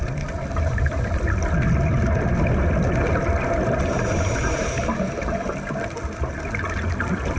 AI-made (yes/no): no